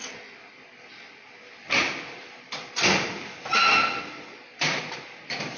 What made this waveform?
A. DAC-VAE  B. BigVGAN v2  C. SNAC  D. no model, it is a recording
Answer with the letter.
D